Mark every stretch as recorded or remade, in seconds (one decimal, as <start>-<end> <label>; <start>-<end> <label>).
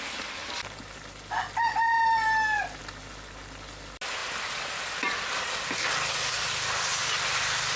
0.0-7.8 recorded